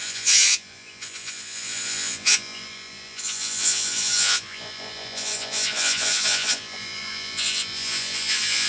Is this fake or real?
fake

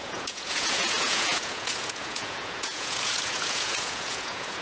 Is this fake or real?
fake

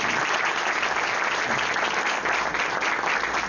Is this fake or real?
real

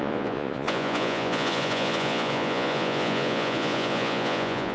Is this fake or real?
fake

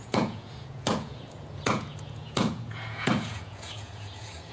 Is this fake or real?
fake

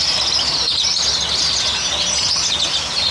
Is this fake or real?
real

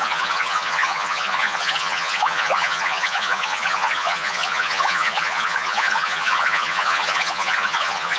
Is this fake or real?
fake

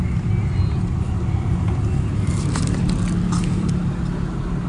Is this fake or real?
real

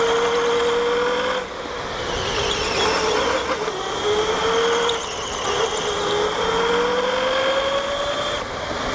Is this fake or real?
real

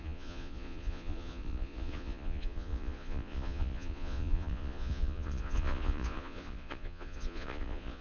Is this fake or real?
fake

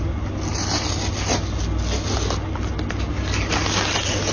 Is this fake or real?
real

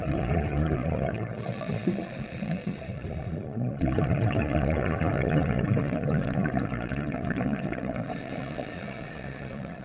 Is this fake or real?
fake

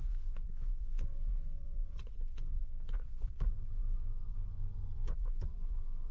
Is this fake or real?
fake